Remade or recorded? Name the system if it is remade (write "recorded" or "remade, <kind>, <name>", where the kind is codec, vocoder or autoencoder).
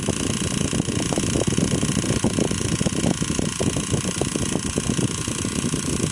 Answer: recorded